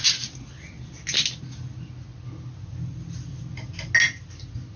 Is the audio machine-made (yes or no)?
no